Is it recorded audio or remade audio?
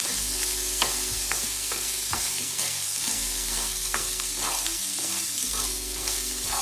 remade